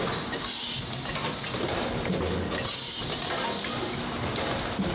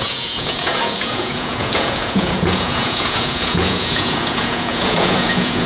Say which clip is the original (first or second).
first